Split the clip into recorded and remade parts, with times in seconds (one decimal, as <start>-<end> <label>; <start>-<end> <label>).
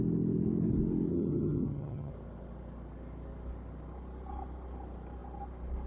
0.0-1.1 recorded; 1.1-2.1 remade; 2.1-5.9 recorded